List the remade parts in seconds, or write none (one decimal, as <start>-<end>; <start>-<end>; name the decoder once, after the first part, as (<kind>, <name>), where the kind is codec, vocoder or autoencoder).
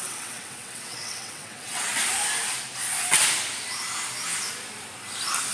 0.0-1.9 (vocoder, WaveNeXt)